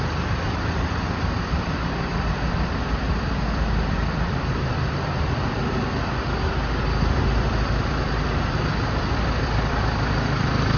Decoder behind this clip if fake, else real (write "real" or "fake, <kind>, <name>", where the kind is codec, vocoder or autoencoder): fake, vocoder, BigVGAN v2